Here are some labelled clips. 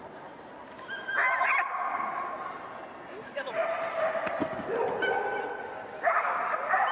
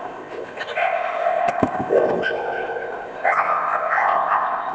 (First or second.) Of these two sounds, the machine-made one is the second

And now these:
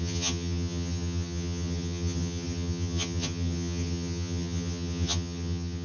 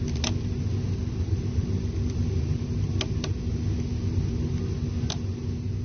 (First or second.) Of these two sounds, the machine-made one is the first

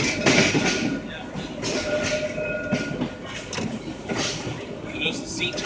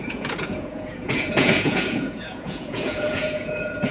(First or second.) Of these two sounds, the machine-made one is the second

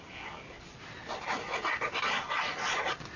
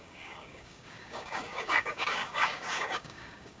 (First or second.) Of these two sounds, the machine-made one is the second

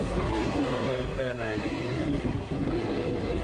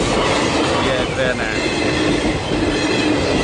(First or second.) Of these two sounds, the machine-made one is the first